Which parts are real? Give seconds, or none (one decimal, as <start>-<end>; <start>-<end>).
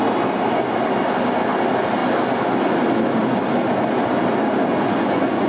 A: 0.0-4.7